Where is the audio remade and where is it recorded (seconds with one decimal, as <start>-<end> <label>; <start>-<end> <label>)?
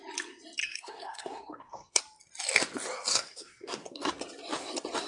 0.0-0.6 recorded; 0.6-2.0 remade; 2.0-3.1 recorded; 3.1-4.1 remade; 4.1-5.1 recorded